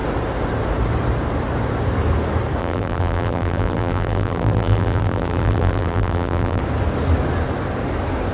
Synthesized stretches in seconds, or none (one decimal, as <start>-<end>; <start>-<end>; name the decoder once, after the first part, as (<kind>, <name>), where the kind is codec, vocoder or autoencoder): 2.6-6.6 (vocoder, BigVGAN v2)